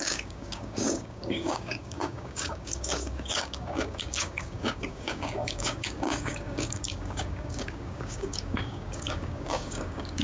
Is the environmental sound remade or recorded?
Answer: remade